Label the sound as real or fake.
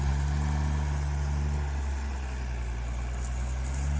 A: real